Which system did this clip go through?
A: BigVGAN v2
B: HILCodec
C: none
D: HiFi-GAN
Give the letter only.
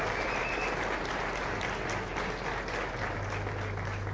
C